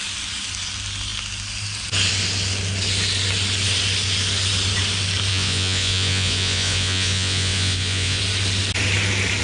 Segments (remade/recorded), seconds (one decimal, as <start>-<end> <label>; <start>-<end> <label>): 0.0-5.3 recorded; 5.3-8.2 remade; 8.2-9.4 recorded